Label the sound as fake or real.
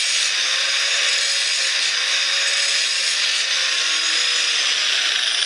real